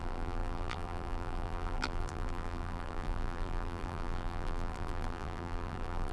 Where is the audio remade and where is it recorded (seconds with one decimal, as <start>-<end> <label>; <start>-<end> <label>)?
0.0-6.1 remade